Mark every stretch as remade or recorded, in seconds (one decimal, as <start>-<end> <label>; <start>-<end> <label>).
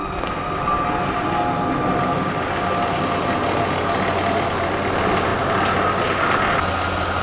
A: 0.0-7.2 recorded